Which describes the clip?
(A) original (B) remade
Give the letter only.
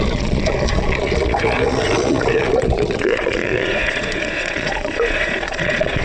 B